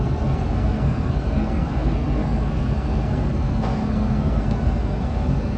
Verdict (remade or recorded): remade